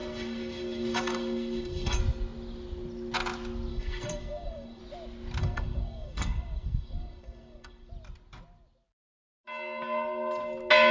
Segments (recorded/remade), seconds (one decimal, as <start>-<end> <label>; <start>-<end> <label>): 0.0-2.0 remade; 2.0-3.7 recorded; 3.7-4.8 remade; 4.8-5.4 recorded; 5.4-7.9 remade; 7.9-10.9 recorded